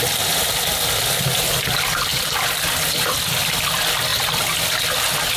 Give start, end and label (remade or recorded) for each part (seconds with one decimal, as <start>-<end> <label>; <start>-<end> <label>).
0.0-4.1 remade; 4.1-5.0 recorded; 5.0-5.4 remade

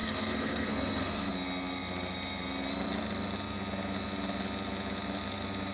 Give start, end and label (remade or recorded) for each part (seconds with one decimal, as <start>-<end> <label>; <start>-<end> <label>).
0.0-1.3 remade; 1.3-5.7 recorded

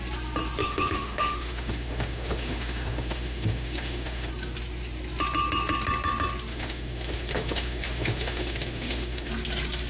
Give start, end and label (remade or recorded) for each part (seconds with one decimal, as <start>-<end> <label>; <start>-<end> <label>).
0.0-0.6 recorded; 0.6-4.3 remade; 4.3-6.5 recorded; 6.5-9.3 remade; 9.3-9.9 recorded

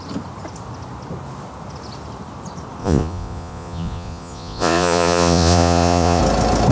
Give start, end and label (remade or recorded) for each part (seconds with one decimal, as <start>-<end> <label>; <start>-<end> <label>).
0.0-2.8 recorded; 2.8-6.2 remade; 6.2-6.7 recorded

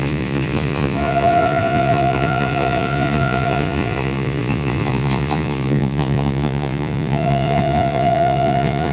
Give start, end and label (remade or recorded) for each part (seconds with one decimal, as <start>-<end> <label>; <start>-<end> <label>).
0.0-8.9 remade

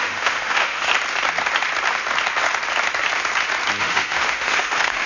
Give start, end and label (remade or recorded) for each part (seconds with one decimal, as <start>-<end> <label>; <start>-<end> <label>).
0.0-0.9 remade; 0.9-3.8 recorded; 3.8-5.1 remade

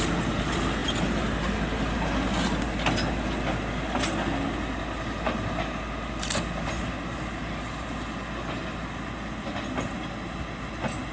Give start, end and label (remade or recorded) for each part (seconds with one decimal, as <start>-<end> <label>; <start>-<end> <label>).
0.0-11.1 recorded

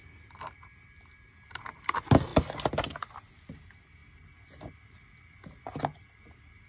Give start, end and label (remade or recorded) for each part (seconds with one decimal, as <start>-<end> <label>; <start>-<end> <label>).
0.0-6.7 recorded